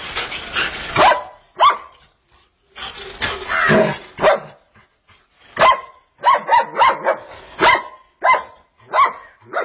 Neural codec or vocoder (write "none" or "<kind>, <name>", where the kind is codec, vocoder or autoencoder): none